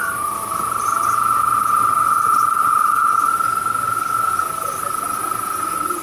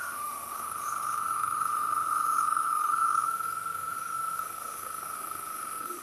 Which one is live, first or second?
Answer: first